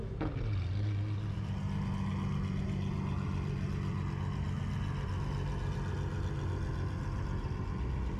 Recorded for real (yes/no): yes